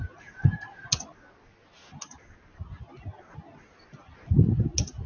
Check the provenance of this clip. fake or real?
real